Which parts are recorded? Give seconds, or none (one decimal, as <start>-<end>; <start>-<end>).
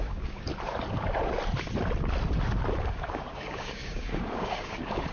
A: 0.5-2.8